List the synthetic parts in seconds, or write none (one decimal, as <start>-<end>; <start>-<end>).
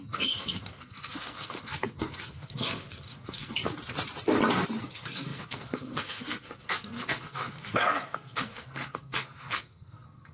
0.0-3.6; 4.8-10.3